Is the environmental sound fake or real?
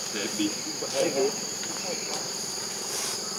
fake